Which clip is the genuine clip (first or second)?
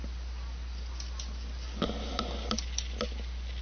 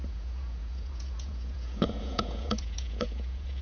first